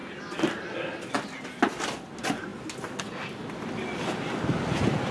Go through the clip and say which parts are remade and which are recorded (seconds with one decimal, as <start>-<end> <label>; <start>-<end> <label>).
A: 0.0-5.1 recorded